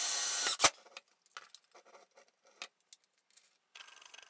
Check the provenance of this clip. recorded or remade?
recorded